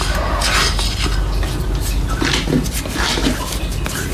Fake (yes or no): no